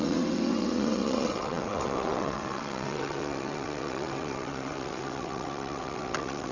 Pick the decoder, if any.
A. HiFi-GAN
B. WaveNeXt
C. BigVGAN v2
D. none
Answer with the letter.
B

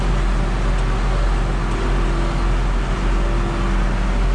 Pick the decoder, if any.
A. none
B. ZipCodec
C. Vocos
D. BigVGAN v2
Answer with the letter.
A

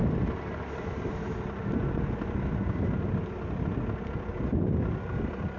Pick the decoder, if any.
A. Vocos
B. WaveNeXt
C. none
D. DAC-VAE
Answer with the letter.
C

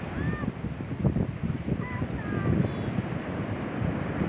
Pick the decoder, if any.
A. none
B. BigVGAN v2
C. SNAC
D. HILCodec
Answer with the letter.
A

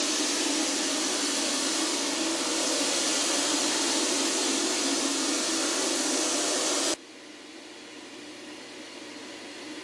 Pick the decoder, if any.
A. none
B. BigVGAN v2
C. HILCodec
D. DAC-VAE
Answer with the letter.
B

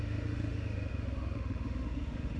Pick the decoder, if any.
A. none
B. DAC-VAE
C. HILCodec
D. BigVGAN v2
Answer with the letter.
B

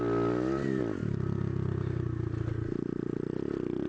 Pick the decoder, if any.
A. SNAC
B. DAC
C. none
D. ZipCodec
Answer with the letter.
C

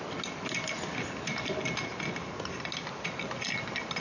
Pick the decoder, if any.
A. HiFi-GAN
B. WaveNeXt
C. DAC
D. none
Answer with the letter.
D